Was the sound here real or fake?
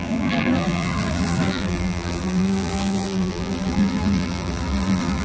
fake